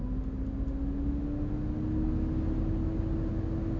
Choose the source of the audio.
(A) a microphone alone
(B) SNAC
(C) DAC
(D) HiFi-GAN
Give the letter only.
A